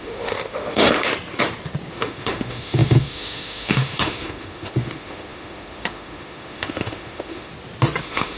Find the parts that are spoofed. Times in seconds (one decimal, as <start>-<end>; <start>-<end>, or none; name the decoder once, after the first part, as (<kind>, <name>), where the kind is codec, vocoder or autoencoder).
0.0-1.1 (autoencoder, DAC-VAE); 1.9-7.5; 8.0-8.4